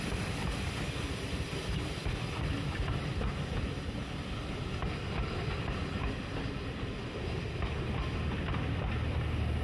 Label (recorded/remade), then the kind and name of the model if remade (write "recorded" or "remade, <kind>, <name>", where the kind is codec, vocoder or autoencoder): recorded